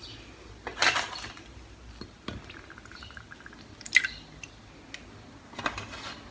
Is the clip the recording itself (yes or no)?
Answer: yes